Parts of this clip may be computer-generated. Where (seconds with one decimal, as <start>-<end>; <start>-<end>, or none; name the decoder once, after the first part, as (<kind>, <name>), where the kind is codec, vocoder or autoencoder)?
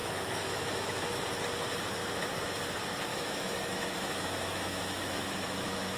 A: 0.0-1.2 (autoencoder, DAC-VAE); 3.1-6.0